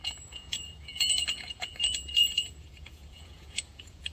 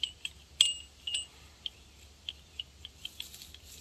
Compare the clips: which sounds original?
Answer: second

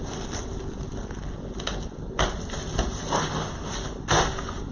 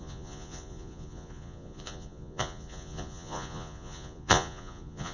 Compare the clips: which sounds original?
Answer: first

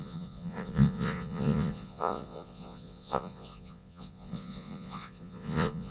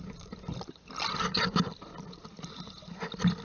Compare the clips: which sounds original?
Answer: second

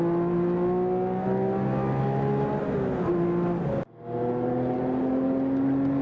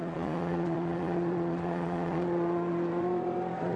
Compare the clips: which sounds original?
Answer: first